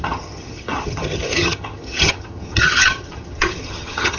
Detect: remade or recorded remade